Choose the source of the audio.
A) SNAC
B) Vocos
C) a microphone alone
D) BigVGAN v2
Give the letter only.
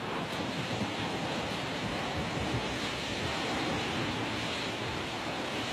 C